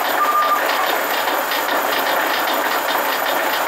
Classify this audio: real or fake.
fake